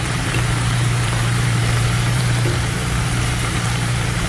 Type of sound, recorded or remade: remade